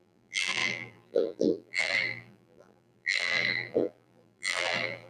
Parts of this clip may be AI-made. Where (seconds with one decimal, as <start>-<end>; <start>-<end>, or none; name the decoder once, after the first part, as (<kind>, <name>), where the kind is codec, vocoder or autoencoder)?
0.0-5.1 (vocoder, BigVGAN v2)